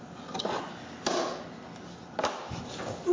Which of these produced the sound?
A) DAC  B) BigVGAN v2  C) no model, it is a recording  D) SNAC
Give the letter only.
C